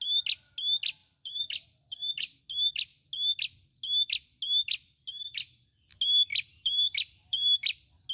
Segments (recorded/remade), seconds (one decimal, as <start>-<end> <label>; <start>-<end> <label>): 0.0-1.0 recorded; 1.0-2.4 remade; 2.4-6.3 recorded; 6.3-8.1 remade